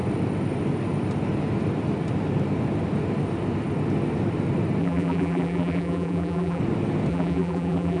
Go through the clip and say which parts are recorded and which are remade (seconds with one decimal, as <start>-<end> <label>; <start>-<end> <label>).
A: 0.0-4.8 recorded; 4.8-6.6 remade; 6.6-7.1 recorded; 7.1-8.0 remade